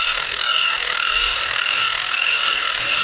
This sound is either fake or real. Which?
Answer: fake